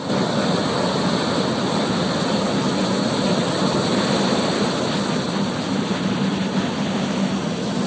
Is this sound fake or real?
real